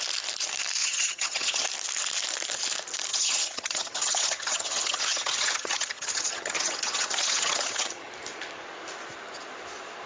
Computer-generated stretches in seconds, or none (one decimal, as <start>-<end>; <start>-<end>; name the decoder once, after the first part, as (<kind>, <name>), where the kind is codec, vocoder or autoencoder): 0.8-1.6 (vocoder, HiFi-GAN); 3.1-8.1